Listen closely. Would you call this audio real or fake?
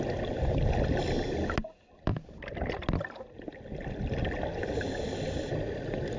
real